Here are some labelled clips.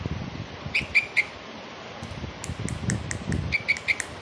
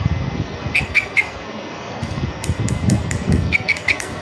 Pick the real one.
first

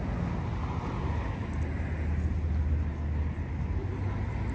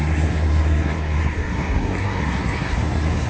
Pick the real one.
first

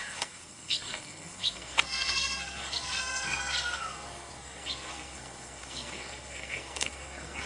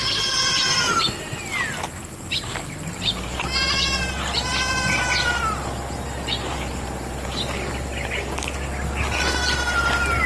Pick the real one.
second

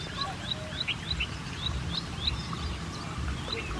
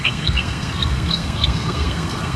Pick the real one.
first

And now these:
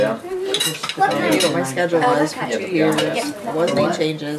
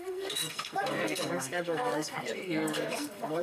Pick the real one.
first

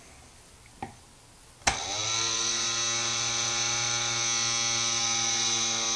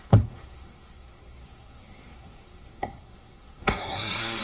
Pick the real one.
first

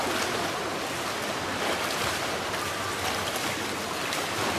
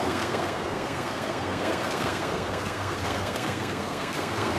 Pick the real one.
first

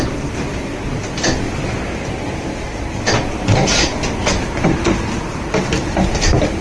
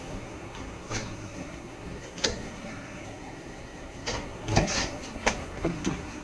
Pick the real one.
first